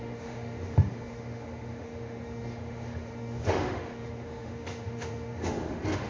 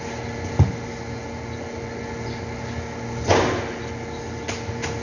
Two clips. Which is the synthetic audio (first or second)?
first